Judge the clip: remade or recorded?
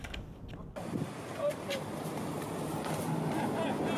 recorded